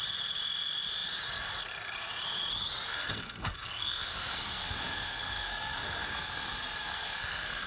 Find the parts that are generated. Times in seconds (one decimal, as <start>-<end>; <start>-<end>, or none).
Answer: 2.9-7.7